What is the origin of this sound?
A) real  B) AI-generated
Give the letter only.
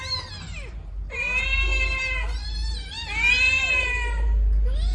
A